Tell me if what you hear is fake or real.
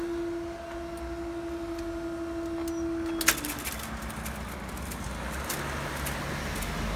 real